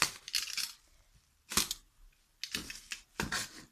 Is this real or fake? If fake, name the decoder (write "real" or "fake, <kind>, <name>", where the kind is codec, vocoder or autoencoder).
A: real